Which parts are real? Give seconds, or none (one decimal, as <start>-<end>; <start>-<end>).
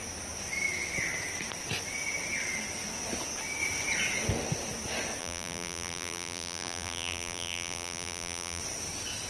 0.0-5.2; 8.6-9.3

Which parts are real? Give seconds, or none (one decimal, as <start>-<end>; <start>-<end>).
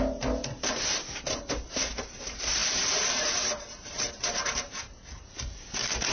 none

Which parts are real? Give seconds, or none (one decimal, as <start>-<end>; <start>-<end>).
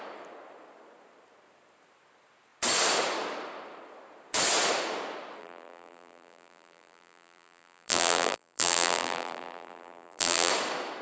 0.0-5.4; 10.5-11.0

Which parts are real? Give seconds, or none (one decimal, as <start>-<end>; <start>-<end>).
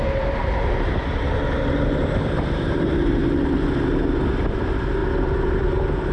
3.2-4.5; 5.0-5.6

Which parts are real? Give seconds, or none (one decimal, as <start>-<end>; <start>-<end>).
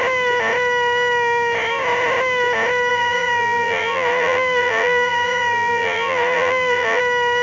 0.0-2.9; 7.0-7.4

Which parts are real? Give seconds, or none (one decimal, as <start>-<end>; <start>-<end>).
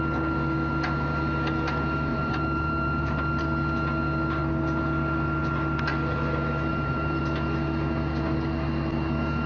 0.0-2.1; 3.2-6.7; 7.2-9.5